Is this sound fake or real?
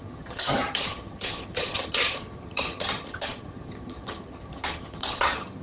fake